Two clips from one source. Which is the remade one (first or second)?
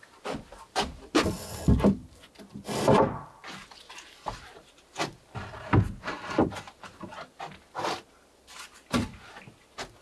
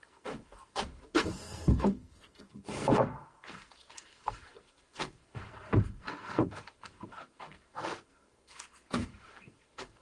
second